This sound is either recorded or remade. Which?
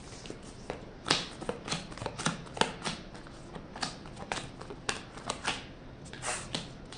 recorded